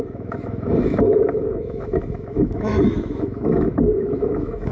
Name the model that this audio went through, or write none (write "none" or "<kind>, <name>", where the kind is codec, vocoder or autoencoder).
autoencoder, DAC-VAE